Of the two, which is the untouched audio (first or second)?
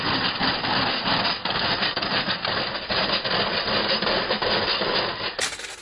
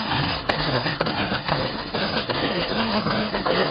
first